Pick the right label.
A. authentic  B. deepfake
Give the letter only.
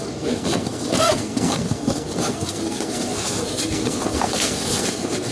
B